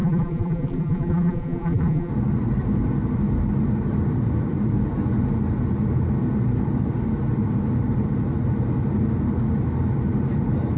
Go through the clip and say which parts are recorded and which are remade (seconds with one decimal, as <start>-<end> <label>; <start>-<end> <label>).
0.0-2.1 remade; 2.1-10.8 recorded